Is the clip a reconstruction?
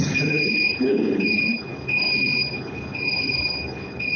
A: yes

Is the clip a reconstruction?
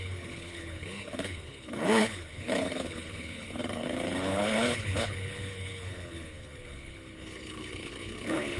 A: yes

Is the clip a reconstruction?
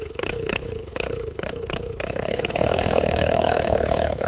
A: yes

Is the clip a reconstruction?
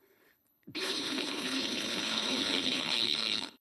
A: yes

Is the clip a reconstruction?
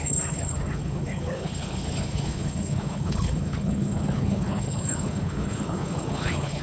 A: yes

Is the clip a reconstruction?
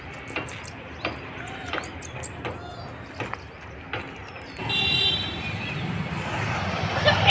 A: no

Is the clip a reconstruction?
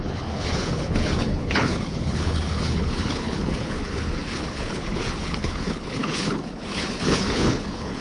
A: yes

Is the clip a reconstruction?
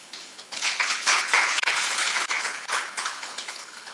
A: yes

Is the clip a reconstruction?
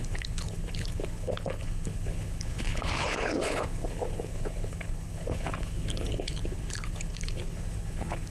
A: yes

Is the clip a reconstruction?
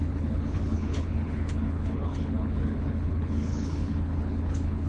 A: yes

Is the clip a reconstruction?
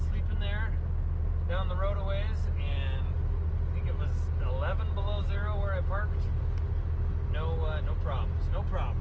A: no